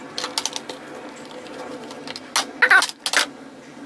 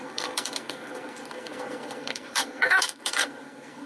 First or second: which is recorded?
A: first